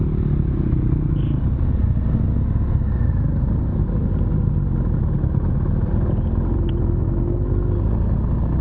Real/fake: real